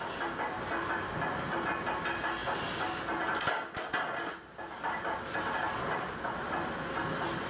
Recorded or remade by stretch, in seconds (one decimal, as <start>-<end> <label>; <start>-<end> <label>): 0.0-7.5 recorded